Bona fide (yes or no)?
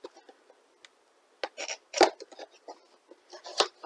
yes